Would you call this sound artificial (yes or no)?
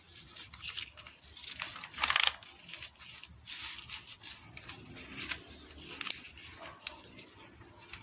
no